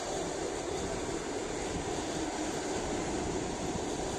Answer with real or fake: real